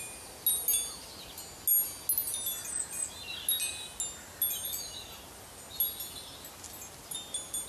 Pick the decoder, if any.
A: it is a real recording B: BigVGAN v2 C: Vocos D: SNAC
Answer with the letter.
A